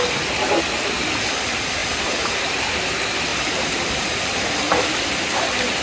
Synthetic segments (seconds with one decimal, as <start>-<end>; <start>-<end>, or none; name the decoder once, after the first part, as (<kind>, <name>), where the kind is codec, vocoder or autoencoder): 3.3-4.4 (vocoder, BigVGAN v2)